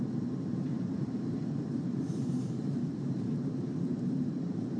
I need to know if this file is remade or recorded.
remade